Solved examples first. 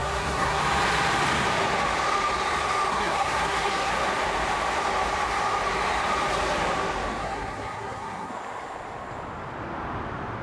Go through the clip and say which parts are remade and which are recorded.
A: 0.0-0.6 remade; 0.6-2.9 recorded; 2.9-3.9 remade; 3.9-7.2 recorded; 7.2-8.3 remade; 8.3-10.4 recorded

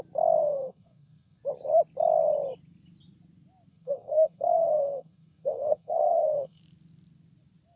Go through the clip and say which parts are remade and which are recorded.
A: 0.0-0.4 recorded; 0.4-1.4 remade; 1.4-3.7 recorded; 3.7-6.6 remade; 6.6-7.8 recorded

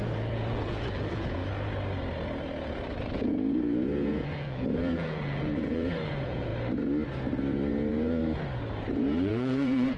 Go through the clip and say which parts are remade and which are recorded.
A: 0.0-1.4 remade; 1.4-3.0 recorded; 3.0-6.5 remade; 6.5-7.7 recorded; 7.7-8.2 remade; 8.2-8.9 recorded; 8.9-10.0 remade

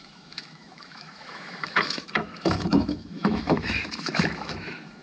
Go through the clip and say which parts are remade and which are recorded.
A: 0.0-5.0 remade

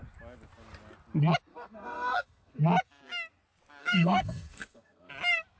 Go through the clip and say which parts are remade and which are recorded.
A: 0.0-1.5 recorded; 1.5-2.6 remade; 2.6-3.8 recorded; 3.8-5.1 remade; 5.1-5.6 recorded

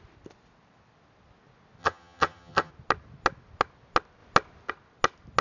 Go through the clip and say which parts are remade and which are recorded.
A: 0.0-1.8 recorded; 1.8-2.7 remade; 2.7-5.4 recorded

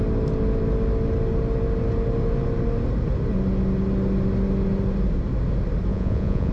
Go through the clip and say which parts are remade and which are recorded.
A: 0.0-5.9 recorded; 5.9-6.5 remade

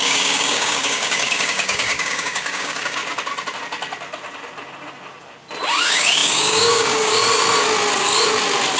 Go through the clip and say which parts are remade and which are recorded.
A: 0.0-3.0 remade; 3.0-5.7 recorded; 5.7-7.2 remade; 7.2-8.8 recorded